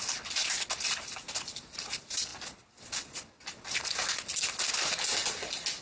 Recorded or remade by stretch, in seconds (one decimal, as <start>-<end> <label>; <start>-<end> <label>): 0.0-5.8 recorded